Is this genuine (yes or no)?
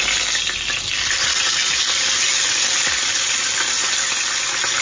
yes